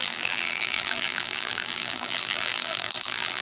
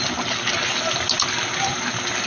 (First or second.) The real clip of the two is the second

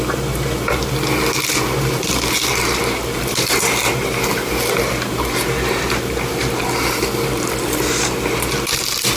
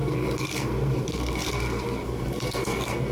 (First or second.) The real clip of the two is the first